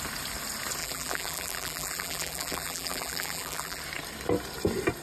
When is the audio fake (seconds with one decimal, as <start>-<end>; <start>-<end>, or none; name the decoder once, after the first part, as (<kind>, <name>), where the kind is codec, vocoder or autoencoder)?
0.8-3.8 (vocoder, BigVGAN v2)

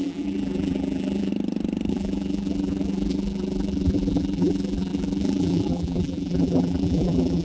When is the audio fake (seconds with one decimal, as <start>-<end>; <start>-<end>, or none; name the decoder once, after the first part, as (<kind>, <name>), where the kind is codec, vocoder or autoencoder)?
0.0-1.3 (vocoder, BigVGAN v2); 1.9-7.4

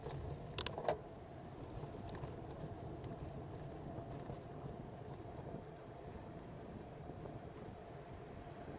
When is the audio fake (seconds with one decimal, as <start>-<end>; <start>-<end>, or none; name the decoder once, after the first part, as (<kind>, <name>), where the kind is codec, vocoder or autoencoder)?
5.2-7.8 (vocoder, BigVGAN v2); 8.4-8.8

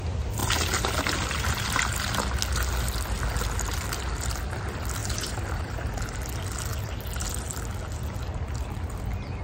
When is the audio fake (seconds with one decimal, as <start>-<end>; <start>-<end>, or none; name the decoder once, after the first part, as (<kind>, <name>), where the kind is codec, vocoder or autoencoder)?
5.0-5.9 (vocoder, BigVGAN v2)

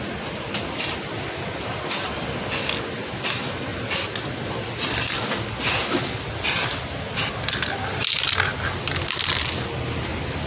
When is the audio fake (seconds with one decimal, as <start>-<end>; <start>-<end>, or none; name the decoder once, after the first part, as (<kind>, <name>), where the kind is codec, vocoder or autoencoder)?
3.7-5.1 (vocoder, BigVGAN v2)

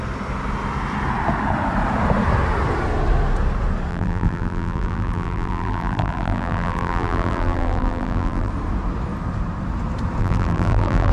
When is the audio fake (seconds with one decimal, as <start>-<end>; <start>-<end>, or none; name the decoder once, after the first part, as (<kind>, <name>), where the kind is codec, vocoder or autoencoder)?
3.9-8.5 (vocoder, BigVGAN v2); 10.2-11.1

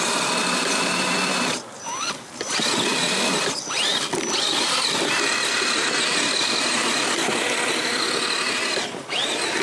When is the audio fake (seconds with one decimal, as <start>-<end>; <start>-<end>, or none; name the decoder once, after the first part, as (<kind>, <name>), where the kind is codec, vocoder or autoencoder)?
0.4-1.1 (vocoder, BigVGAN v2); 2.9-8.0